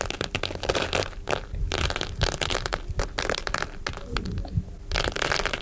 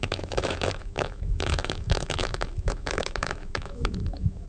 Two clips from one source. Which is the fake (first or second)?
second